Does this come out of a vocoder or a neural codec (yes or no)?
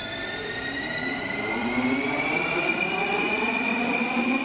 yes